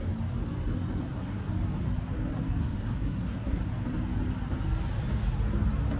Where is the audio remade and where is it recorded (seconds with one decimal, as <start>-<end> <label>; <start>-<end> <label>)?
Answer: 0.0-1.0 recorded; 1.0-1.5 remade; 1.5-2.6 recorded; 2.6-3.6 remade; 3.6-6.0 recorded